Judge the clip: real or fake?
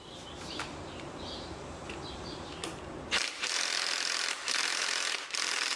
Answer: fake